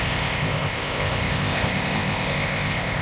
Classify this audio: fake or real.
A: fake